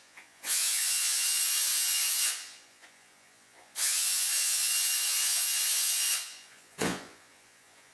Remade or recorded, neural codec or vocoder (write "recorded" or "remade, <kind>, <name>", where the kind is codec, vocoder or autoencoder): remade, vocoder, Vocos